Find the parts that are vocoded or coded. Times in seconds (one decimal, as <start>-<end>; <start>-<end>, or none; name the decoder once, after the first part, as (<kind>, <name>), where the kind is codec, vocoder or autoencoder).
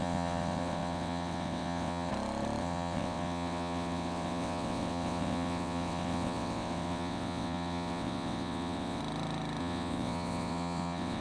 0.0-2.1 (vocoder, WaveNeXt); 2.6-9.0; 9.6-11.2